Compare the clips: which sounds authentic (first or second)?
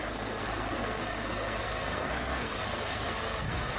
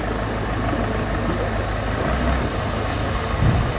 second